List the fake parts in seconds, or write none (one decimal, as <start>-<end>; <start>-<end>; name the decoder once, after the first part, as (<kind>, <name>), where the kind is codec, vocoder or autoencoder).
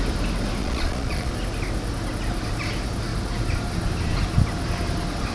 0.6-1.3 (vocoder, Vocos)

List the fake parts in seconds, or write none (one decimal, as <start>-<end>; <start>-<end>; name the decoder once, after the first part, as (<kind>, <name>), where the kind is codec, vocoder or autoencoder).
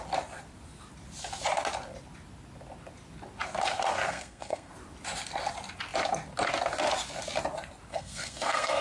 4.1-4.7 (codec, SNAC); 7.9-8.8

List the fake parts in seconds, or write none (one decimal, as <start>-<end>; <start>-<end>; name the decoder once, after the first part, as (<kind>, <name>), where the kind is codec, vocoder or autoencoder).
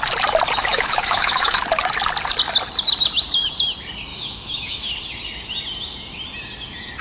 0.7-1.6 (autoencoder, DAC-VAE); 4.1-4.9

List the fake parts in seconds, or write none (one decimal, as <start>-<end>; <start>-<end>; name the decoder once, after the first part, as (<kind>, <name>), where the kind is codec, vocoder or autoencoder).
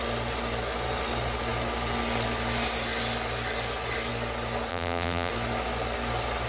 4.7-5.3 (vocoder, BigVGAN v2)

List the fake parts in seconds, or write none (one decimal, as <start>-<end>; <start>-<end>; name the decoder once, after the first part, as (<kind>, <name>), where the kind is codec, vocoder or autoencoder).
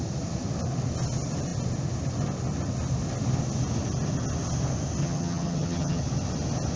5.0-6.0 (vocoder, HiFi-GAN)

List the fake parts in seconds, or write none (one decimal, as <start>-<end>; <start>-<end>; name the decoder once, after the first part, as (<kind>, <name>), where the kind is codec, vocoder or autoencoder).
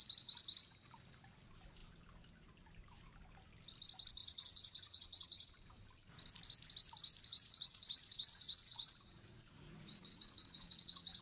4.2-5.5 (vocoder, Vocos); 7.3-11.2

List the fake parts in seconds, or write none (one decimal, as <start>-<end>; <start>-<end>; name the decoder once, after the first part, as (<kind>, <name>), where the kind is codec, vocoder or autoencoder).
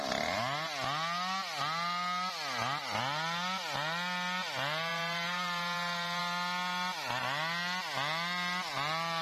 4.9-6.2 (vocoder, BigVGAN v2)